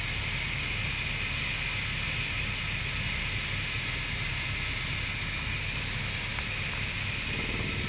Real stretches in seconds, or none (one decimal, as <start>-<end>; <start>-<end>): 0.0-7.9